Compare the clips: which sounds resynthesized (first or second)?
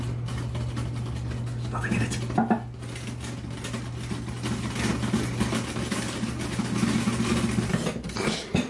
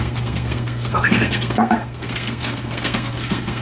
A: second